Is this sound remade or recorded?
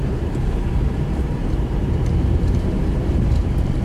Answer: remade